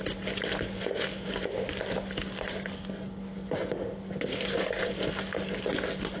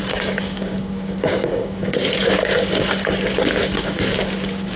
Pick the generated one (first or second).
second